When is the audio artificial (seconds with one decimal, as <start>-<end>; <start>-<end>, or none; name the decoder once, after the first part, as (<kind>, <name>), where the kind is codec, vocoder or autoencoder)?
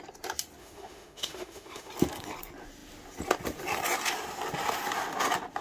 0.6-1.9 (autoencoder, DAC-VAE)